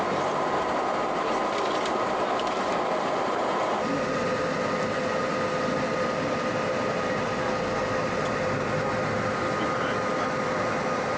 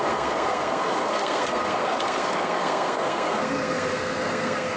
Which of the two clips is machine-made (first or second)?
second